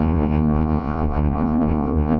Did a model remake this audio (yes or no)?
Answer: yes